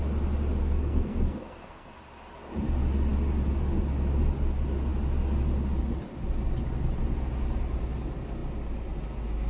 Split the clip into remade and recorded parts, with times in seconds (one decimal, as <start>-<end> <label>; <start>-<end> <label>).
0.0-0.6 recorded; 0.6-1.9 remade; 1.9-9.5 recorded